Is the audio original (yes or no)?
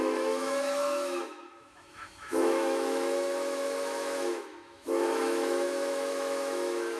no